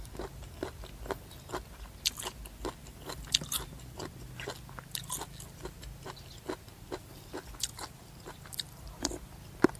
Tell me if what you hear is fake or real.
real